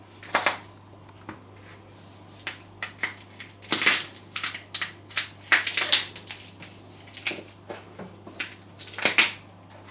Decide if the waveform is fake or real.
real